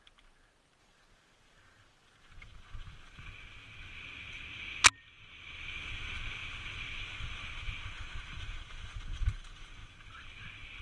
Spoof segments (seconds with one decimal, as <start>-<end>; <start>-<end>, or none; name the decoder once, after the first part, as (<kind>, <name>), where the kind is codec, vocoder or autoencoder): none